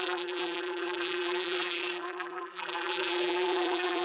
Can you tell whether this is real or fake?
fake